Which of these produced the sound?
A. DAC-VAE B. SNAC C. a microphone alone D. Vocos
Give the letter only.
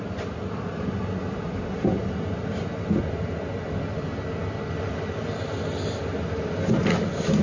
C